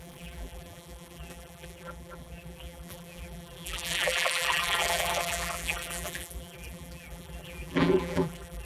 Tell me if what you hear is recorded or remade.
remade